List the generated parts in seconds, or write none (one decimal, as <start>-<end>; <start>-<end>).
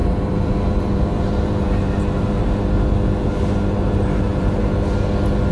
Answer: 0.0-4.6